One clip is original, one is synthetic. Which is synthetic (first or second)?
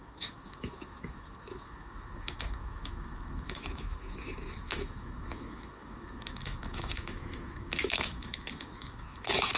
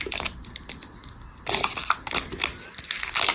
first